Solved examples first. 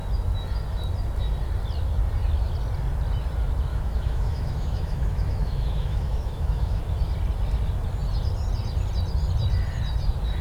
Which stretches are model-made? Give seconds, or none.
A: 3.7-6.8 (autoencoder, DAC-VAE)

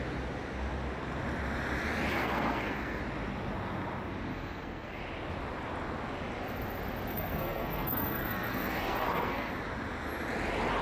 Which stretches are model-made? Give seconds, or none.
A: 2.1-3.0 (codec, SNAC); 4.3-5.0; 7.1-9.5

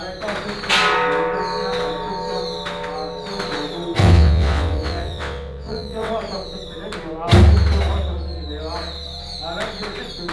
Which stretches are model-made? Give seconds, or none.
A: 4.0-6.1 (vocoder, WaveNeXt)

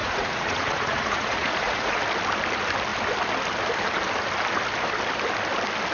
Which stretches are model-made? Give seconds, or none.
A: 0.0-2.0 (vocoder, Vocos)

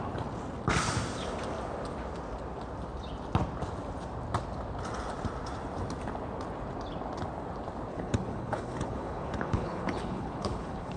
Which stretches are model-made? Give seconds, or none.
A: 7.9-11.0 (codec, HILCodec)

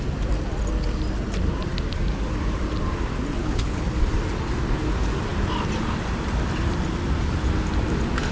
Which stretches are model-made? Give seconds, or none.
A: 3.4-3.9 (codec, HILCodec)